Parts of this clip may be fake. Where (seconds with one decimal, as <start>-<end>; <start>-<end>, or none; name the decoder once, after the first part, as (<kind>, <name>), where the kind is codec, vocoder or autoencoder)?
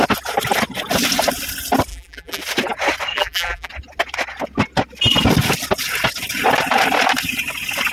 1.9-2.4 (vocoder, BigVGAN v2); 3.1-3.7